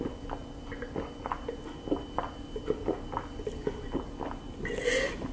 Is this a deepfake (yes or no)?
no